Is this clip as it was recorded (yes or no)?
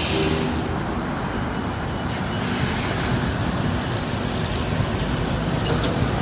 yes